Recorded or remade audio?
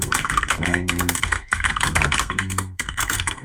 remade